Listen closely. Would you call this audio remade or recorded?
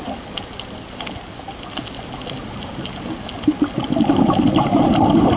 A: recorded